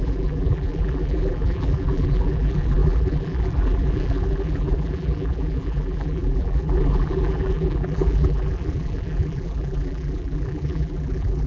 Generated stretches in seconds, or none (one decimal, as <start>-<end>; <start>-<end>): 0.0-11.5